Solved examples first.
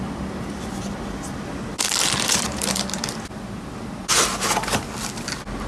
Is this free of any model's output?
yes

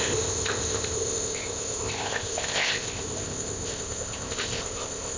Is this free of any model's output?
no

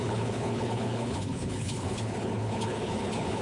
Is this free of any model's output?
no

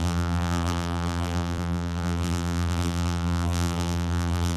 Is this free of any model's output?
no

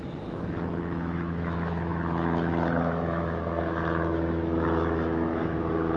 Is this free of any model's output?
no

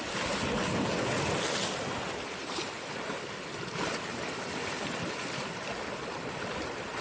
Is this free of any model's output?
yes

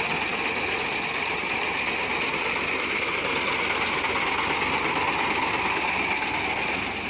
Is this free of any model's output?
yes